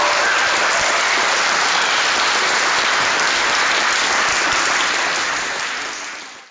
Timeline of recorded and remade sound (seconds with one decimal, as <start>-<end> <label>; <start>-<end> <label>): 0.0-1.2 recorded; 1.2-2.0 remade; 2.0-6.5 recorded

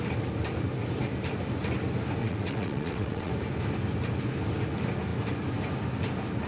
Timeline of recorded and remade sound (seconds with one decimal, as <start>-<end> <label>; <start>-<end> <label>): 0.0-2.2 recorded; 2.2-3.3 remade; 3.3-6.5 recorded

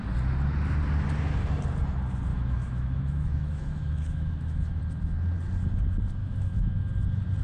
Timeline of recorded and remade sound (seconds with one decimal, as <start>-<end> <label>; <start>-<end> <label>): 0.0-2.3 recorded; 2.3-4.8 remade; 4.8-6.2 recorded; 6.2-6.9 remade; 6.9-7.4 recorded

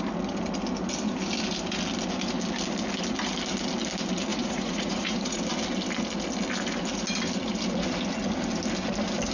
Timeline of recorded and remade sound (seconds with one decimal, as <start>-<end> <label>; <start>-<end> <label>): 0.0-4.3 recorded; 4.3-5.4 remade; 5.4-9.3 recorded

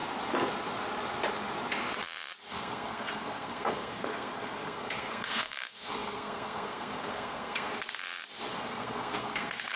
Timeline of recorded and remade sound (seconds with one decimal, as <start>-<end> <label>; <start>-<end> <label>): 0.0-2.5 recorded; 2.5-7.7 remade; 7.7-8.5 recorded; 8.5-9.8 remade

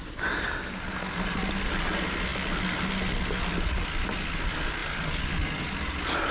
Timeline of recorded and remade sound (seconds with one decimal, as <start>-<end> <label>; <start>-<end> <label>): 0.0-6.3 recorded